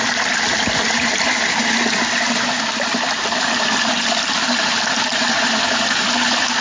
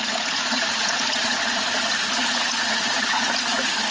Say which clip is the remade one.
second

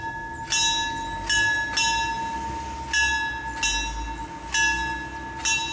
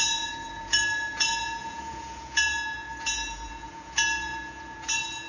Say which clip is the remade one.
second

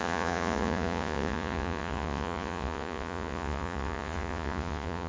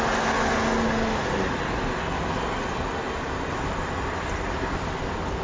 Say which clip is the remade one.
first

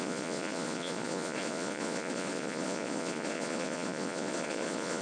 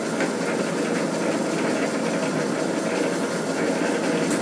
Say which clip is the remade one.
first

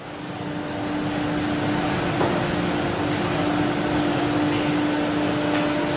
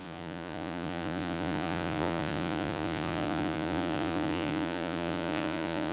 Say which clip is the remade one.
second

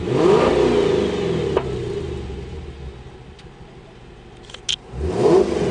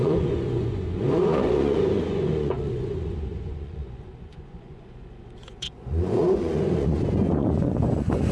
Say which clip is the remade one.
second